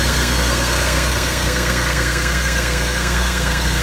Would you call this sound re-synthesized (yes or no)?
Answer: yes